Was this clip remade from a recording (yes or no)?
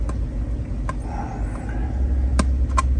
no